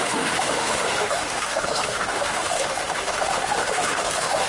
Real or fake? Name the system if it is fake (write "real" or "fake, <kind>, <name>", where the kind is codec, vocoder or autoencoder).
fake, autoencoder, DAC-VAE